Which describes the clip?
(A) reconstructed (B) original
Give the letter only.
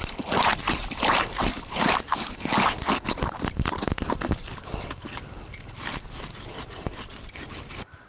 A